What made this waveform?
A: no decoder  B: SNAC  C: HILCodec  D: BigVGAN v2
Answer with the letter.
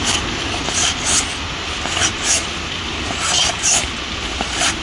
A